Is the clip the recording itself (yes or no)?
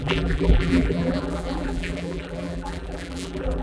no